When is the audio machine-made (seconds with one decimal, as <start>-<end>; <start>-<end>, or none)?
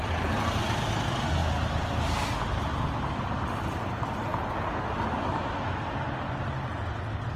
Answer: none